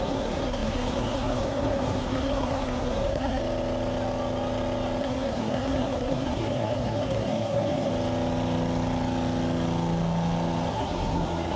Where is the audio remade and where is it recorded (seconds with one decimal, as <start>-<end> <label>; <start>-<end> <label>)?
0.0-3.4 remade; 3.4-5.0 recorded; 5.0-7.9 remade; 7.9-10.7 recorded; 10.7-11.6 remade